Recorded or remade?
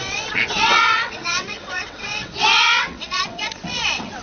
remade